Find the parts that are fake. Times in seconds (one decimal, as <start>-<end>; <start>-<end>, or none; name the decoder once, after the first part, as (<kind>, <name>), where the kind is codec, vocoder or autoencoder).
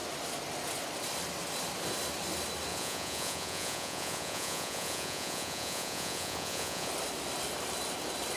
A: 2.7-6.9 (vocoder, Vocos)